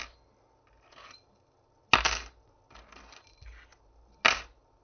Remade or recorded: recorded